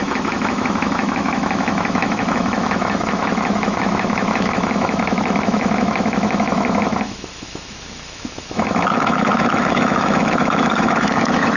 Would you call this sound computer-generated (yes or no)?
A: yes